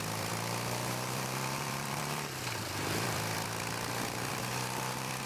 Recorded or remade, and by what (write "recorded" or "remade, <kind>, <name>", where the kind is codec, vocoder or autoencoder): remade, vocoder, BigVGAN v2